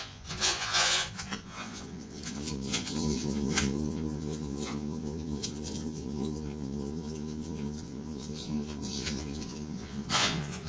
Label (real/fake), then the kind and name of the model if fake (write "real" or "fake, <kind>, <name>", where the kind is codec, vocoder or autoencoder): fake, vocoder, Vocos